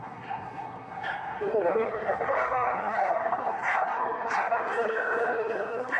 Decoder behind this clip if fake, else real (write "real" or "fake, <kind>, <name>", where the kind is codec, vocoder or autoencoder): fake, codec, SNAC